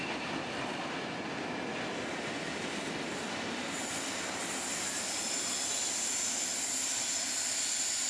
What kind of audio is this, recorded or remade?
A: recorded